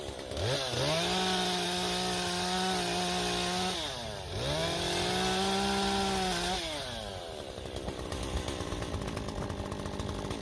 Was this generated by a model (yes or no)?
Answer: no